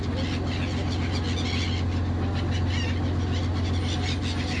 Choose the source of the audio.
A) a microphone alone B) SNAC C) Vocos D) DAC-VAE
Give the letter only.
A